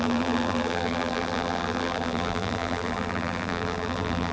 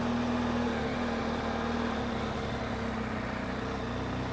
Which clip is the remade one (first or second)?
first